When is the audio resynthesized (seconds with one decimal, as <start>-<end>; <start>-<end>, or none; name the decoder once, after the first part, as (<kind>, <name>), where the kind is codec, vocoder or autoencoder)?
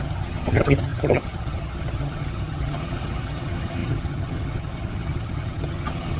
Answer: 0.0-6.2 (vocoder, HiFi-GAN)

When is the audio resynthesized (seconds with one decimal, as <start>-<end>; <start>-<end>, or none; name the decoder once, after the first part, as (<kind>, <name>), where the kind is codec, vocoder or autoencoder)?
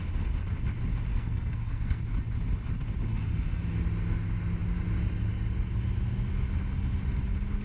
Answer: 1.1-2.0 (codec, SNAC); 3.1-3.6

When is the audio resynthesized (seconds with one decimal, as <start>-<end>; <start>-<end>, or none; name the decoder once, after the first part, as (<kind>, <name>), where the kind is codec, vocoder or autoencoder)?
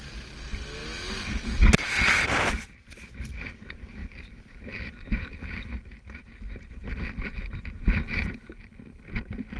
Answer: 4.0-5.3 (vocoder, BigVGAN v2)